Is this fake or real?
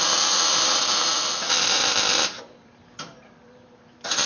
fake